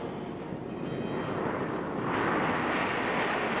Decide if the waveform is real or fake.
real